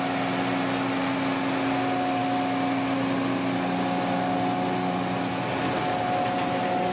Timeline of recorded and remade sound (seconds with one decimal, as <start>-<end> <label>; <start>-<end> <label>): 0.0-6.9 recorded